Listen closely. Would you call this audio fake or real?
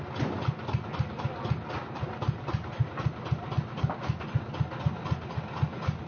real